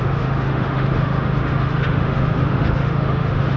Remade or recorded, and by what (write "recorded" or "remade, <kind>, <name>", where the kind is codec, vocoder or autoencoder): remade, autoencoder, DAC-VAE